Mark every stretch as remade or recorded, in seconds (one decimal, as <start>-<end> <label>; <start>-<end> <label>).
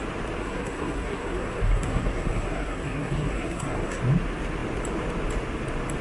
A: 0.0-0.4 recorded; 0.4-4.0 remade; 4.0-6.0 recorded